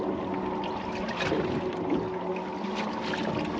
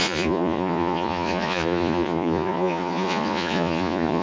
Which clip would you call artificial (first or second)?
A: second